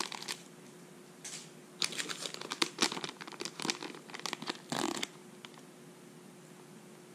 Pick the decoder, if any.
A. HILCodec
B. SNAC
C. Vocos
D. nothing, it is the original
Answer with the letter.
D